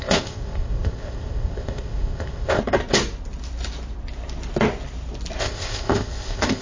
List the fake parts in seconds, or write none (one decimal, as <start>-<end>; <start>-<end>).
0.0-2.6; 5.4-6.6